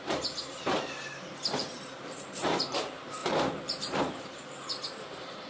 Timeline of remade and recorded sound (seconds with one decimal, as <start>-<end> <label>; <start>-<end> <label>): 0.0-5.5 remade